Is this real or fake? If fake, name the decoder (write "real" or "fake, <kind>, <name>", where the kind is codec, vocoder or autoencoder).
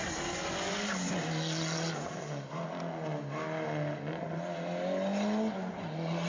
real